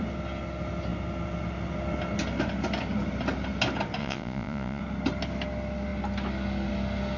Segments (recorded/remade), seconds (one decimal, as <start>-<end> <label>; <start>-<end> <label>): 0.0-4.0 recorded; 4.0-4.8 remade; 4.8-7.2 recorded